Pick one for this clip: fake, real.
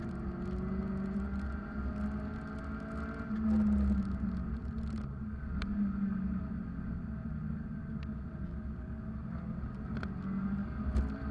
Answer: real